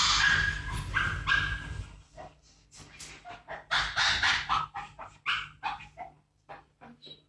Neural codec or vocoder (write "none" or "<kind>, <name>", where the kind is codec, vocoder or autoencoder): none